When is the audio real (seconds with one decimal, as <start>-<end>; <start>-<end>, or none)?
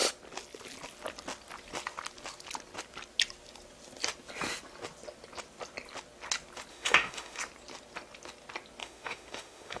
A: 0.0-6.7; 7.4-8.8